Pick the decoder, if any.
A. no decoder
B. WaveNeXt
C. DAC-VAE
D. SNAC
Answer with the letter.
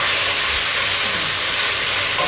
A